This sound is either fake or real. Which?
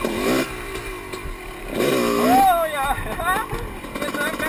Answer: real